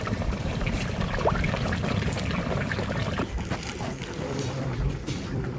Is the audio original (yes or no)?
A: no